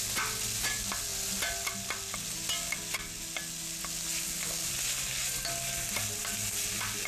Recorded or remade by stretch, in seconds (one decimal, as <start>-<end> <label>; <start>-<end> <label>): 0.0-6.2 recorded; 6.2-7.1 remade